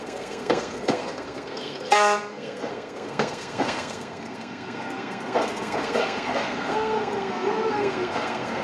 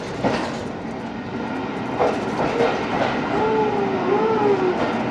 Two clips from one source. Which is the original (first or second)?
second